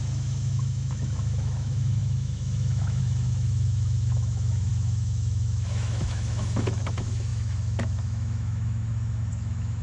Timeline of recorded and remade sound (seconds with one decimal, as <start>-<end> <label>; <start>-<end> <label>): 0.0-9.8 remade